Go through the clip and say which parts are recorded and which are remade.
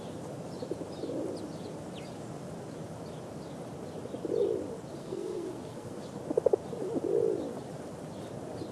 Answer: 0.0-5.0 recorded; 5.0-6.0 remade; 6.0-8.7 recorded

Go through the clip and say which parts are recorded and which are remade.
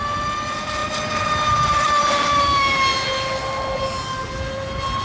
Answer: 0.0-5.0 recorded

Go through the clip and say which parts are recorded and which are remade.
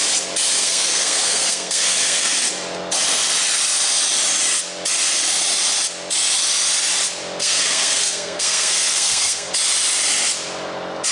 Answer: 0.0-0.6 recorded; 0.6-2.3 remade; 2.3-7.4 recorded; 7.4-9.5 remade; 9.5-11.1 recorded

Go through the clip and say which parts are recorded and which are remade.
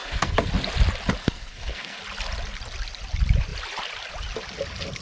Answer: 0.0-0.5 remade; 0.5-1.2 recorded; 1.2-2.0 remade; 2.0-5.0 recorded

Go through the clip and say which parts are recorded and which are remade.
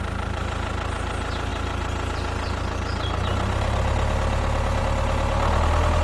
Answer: 0.0-6.0 recorded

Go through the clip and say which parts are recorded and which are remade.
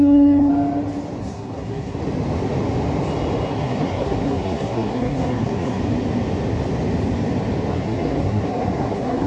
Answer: 0.0-0.5 remade; 0.5-1.2 recorded; 1.2-2.0 remade; 2.0-3.5 recorded; 3.5-5.8 remade; 5.8-7.7 recorded; 7.7-9.3 remade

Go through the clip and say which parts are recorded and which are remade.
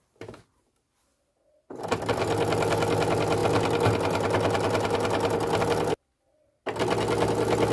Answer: 0.0-7.7 recorded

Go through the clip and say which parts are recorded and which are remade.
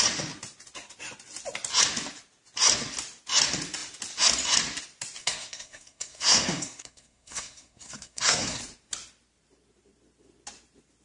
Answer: 0.0-5.2 recorded; 5.2-8.6 remade; 8.6-11.0 recorded